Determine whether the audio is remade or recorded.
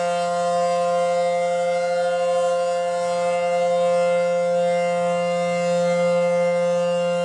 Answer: recorded